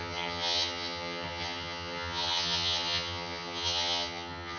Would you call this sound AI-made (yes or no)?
yes